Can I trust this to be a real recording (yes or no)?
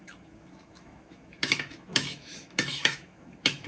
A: no